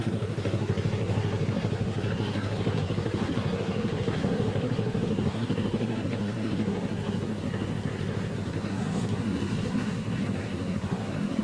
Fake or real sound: fake